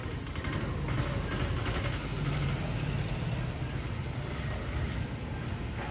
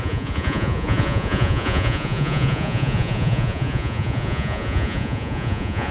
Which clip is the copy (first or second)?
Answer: second